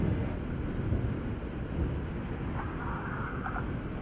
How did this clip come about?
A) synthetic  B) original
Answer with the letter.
B